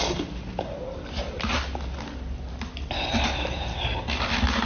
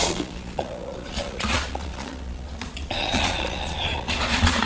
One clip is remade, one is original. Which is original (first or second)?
first